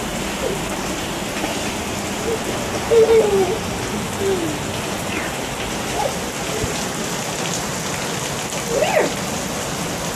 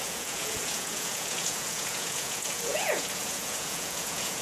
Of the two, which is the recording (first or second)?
first